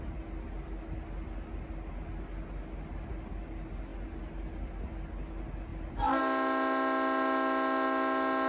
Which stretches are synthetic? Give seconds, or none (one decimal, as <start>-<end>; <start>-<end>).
none